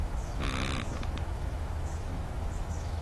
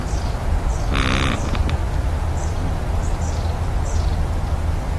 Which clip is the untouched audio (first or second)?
second